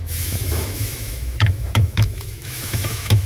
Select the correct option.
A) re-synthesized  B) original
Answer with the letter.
A